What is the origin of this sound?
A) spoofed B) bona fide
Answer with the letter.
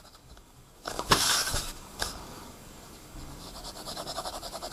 A